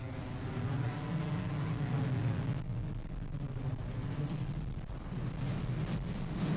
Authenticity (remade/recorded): recorded